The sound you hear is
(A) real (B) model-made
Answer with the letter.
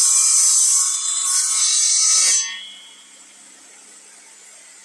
A